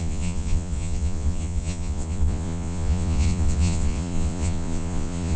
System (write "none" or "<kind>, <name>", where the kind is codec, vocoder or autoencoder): vocoder, Vocos